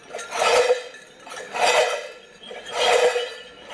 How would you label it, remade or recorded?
recorded